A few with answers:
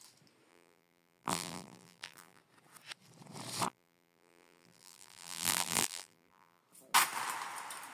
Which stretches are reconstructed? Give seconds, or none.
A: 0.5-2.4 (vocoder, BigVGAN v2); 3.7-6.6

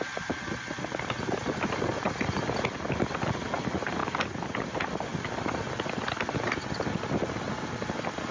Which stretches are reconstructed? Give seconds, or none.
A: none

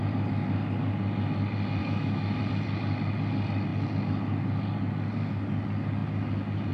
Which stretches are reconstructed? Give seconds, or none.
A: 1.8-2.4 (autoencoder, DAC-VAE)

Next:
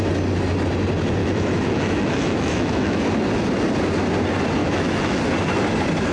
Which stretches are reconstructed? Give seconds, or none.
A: 1.2-3.0 (autoencoder, DAC-VAE); 4.6-5.2